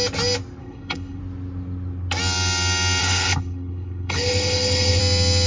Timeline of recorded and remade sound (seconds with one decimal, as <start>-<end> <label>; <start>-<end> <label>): 0.0-0.6 recorded; 0.6-1.2 remade; 1.2-3.0 recorded; 3.0-5.0 remade; 5.0-5.5 recorded